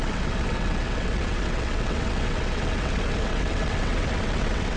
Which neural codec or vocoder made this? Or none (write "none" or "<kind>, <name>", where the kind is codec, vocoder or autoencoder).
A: vocoder, WaveNeXt